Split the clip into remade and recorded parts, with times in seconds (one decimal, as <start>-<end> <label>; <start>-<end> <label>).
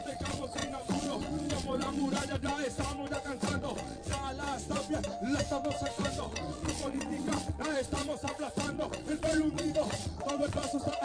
0.0-2.5 remade; 2.5-3.2 recorded; 3.2-4.1 remade; 4.1-6.2 recorded; 6.2-11.0 remade